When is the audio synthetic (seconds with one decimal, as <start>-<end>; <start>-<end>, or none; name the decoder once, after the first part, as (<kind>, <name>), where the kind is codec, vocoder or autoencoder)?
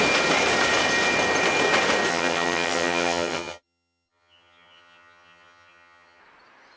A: 2.1-6.2 (vocoder, HiFi-GAN)